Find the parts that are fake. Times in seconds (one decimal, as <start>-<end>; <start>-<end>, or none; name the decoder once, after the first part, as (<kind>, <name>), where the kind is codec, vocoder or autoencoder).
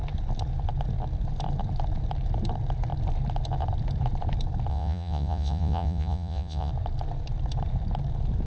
4.7-6.7 (vocoder, Vocos)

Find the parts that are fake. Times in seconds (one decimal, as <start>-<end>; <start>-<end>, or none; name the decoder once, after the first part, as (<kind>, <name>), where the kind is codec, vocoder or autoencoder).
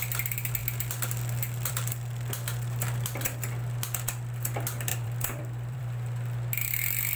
4.9-5.8 (vocoder, BigVGAN v2)